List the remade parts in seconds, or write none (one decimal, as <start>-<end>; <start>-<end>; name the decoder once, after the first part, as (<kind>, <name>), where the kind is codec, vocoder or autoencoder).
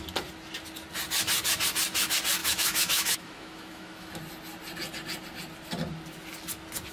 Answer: 2.4-4.2 (autoencoder, DAC-VAE)